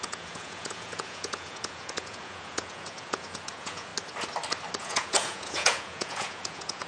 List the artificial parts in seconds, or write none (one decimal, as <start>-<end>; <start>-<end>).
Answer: 0.0-3.9; 4.8-6.9